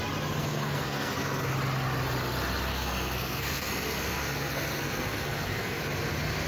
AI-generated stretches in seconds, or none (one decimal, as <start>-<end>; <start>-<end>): 0.4-1.5; 2.7-5.8